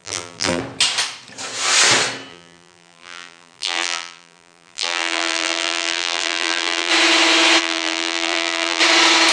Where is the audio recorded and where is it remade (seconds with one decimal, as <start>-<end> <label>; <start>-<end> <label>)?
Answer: 0.0-0.6 remade; 0.6-2.3 recorded; 2.3-6.9 remade; 6.9-7.6 recorded; 7.6-8.8 remade; 8.8-9.3 recorded